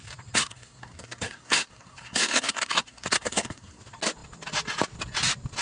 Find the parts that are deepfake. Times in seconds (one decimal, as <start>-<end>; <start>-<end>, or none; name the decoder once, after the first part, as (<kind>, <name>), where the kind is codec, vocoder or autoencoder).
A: 0.4-3.8 (codec, SNAC)